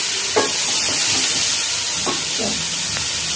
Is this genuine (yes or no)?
yes